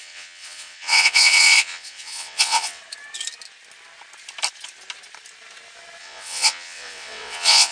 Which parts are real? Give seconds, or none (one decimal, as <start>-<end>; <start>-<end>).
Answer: 2.8-6.0